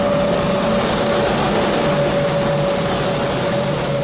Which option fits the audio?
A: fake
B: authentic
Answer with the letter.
B